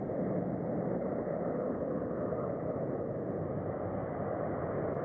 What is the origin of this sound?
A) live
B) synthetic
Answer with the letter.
A